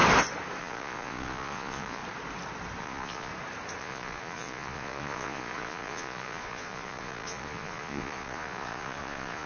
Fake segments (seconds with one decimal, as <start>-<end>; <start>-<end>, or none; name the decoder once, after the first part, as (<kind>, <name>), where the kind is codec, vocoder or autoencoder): 0.6-2.0 (vocoder, Vocos); 2.8-3.3; 3.8-9.5

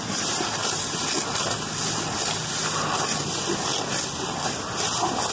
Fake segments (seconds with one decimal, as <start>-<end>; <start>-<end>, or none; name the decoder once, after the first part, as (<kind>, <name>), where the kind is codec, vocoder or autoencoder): none

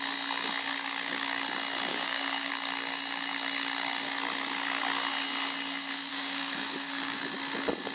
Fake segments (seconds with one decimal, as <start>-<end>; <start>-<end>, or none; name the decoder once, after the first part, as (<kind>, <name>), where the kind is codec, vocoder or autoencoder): 1.9-2.5 (codec, DAC); 6.1-7.2

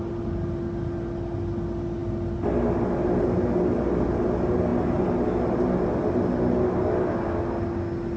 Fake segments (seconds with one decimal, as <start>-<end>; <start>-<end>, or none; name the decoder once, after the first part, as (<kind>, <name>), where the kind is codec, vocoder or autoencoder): none